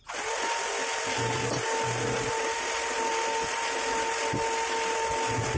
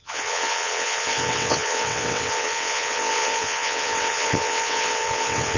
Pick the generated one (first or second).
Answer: second